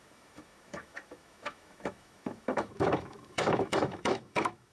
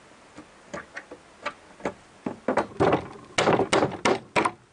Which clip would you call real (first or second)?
second